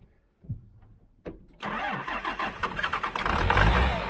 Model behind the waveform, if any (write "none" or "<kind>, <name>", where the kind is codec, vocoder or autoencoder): none